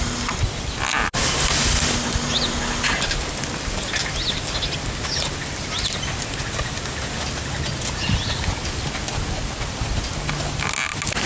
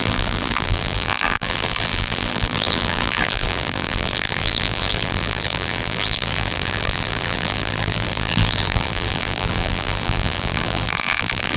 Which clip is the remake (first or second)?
second